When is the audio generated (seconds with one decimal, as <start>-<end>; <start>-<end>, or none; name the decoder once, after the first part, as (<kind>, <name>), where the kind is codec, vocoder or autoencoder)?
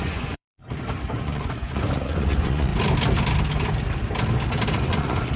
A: 0.0-0.6 (vocoder, Vocos); 1.1-2.7; 4.8-5.4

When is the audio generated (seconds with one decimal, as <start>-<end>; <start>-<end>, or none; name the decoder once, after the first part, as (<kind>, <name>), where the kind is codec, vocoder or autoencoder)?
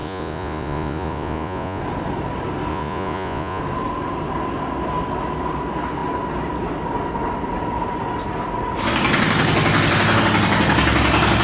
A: 0.0-1.8 (vocoder, Vocos); 2.7-3.6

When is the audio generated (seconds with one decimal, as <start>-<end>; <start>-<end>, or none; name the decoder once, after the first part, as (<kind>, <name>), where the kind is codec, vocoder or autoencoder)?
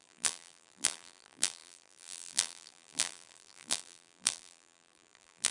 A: 0.0-5.5 (vocoder, BigVGAN v2)